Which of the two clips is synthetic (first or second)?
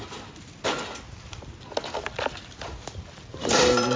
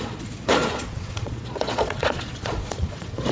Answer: second